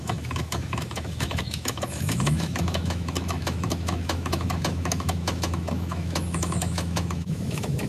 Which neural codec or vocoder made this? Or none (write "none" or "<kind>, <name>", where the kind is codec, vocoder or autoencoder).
autoencoder, DAC-VAE